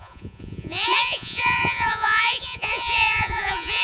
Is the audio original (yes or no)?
no